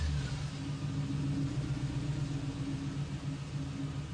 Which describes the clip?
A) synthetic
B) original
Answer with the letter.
B